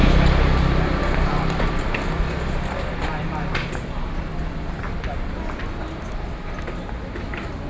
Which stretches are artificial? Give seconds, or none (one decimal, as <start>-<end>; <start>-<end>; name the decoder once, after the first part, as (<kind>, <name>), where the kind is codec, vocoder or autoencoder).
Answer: none